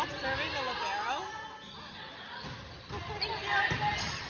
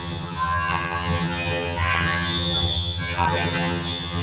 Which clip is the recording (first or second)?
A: first